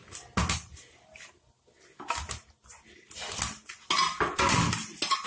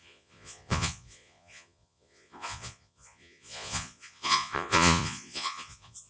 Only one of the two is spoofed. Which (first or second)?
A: second